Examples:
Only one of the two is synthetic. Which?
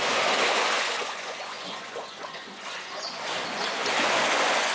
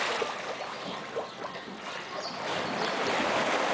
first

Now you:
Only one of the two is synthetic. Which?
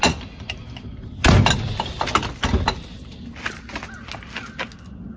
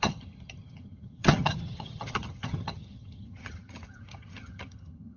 second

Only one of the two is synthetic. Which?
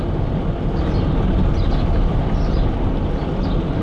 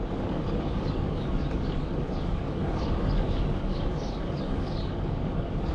second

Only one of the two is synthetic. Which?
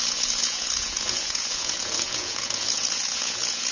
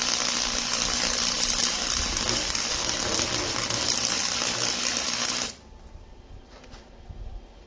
first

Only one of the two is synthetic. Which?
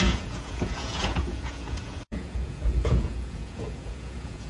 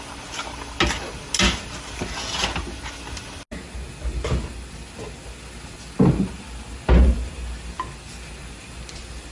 first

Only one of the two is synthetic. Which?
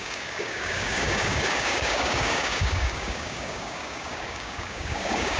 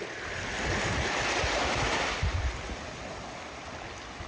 first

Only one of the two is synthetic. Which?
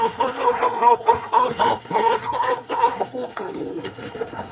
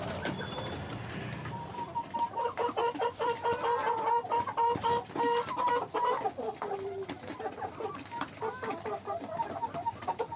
first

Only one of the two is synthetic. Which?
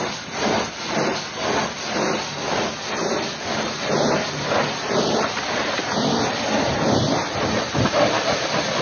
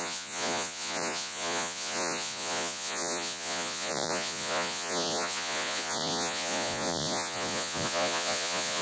second